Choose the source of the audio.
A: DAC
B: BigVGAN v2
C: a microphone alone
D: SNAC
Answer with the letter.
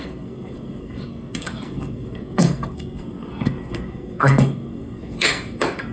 D